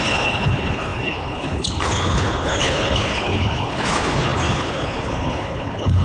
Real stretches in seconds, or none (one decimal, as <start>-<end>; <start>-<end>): none